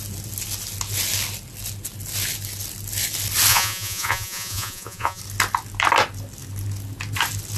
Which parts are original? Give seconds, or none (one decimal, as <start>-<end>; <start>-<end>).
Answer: 0.0-3.5; 5.2-7.6